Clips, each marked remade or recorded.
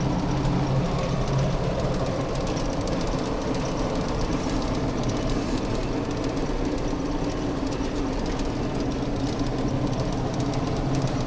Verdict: recorded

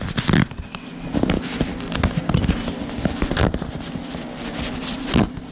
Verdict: recorded